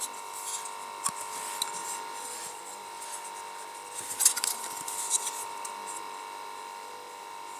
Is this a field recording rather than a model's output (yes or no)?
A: yes